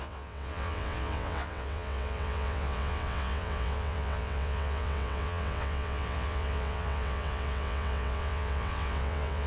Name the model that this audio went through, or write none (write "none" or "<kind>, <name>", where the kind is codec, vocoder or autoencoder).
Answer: vocoder, WaveNeXt